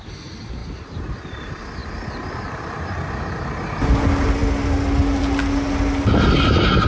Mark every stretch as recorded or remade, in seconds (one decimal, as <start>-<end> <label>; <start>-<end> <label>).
0.0-6.9 recorded